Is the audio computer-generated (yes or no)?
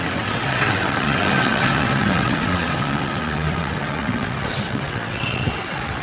yes